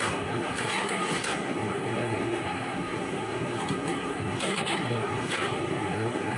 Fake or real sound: fake